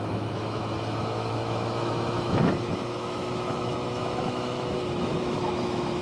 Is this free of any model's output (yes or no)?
no